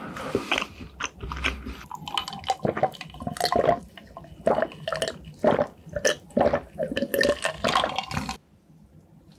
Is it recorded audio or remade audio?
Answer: recorded